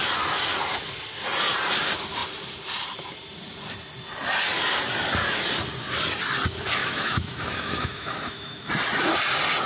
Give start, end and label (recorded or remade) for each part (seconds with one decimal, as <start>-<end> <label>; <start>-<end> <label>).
0.0-6.8 recorded; 6.8-8.7 remade; 8.7-9.7 recorded